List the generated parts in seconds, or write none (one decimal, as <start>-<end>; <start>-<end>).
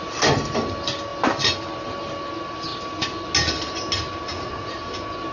4.3-4.8